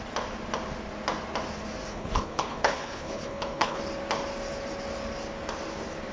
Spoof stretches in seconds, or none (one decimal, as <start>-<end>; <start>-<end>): 1.9-3.8